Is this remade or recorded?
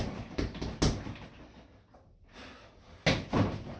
recorded